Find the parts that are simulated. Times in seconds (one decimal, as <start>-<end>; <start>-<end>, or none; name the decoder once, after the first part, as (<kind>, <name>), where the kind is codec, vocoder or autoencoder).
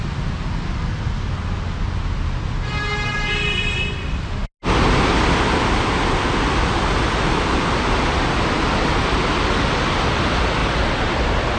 none